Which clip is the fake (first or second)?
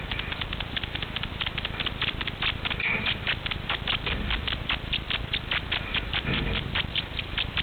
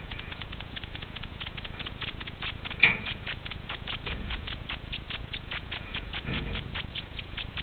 second